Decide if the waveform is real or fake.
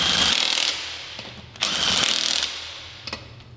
real